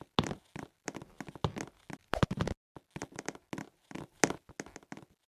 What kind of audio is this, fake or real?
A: real